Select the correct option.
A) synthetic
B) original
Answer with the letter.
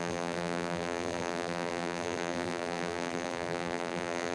A